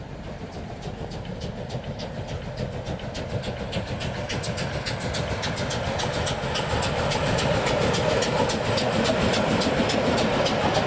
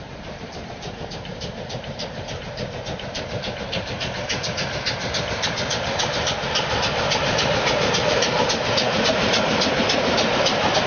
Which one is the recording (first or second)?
first